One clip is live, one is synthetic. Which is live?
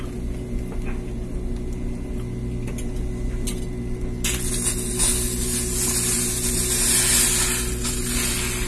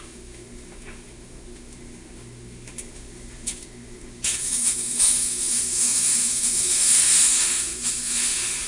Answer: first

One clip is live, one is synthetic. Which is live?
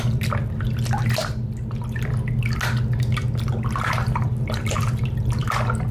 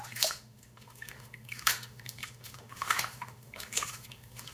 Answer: first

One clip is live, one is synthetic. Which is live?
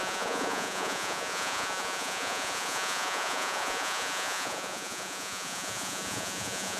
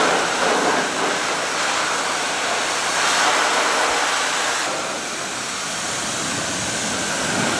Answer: second